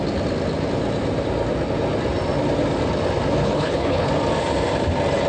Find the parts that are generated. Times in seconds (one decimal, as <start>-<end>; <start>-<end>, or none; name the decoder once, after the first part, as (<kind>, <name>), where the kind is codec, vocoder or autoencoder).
3.4-4.1 (codec, HILCodec)